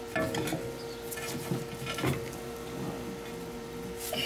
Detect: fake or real real